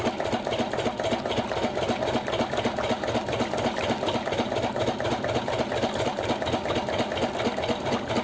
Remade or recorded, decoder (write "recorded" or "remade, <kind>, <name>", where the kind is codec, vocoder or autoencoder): recorded